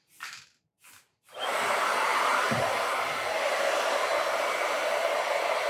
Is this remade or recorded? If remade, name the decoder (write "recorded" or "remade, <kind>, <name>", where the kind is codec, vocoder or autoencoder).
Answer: recorded